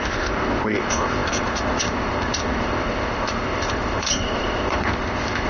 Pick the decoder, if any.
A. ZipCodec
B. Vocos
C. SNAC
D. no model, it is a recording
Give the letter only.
A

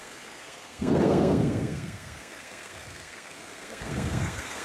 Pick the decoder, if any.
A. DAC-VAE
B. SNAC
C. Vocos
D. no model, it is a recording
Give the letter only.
B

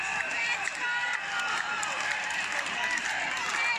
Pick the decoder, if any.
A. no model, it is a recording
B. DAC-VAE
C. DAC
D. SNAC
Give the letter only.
A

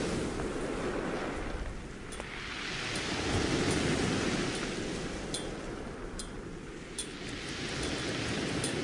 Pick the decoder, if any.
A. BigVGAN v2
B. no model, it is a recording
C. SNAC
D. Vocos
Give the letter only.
B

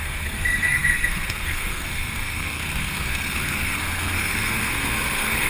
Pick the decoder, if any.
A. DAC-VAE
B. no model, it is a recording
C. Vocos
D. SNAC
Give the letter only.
D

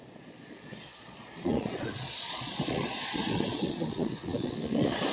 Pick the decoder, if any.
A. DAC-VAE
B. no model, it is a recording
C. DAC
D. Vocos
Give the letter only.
D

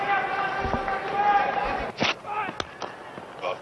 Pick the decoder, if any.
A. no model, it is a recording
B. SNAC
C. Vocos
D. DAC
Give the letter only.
A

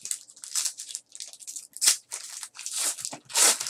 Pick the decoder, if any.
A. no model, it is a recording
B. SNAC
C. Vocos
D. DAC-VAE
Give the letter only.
A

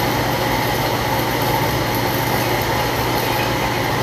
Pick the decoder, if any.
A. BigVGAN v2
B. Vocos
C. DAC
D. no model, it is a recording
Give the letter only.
D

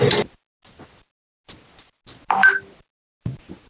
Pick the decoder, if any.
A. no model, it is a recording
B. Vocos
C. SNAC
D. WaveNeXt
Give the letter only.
A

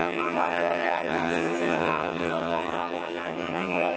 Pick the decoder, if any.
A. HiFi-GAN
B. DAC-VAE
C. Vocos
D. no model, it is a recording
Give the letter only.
A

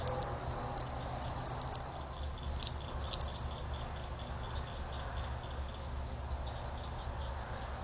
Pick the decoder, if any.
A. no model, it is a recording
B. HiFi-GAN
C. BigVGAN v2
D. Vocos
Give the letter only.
A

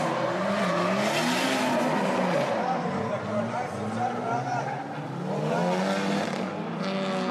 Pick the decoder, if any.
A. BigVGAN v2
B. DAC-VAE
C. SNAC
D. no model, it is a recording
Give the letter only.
D